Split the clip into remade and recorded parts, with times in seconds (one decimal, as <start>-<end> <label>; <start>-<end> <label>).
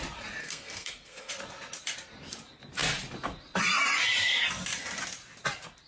0.0-0.4 recorded; 0.4-1.3 remade; 1.3-5.9 recorded